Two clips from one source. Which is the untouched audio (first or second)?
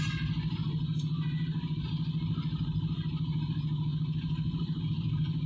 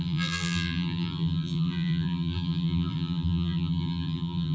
first